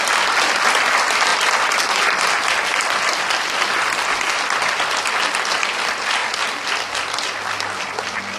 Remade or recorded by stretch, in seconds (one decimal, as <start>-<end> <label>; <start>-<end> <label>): 0.0-8.4 recorded